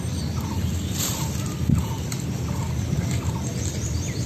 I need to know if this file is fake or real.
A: real